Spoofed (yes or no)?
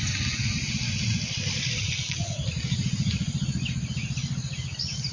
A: no